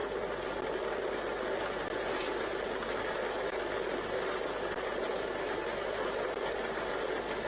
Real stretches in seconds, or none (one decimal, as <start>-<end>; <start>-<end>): 0.0-7.5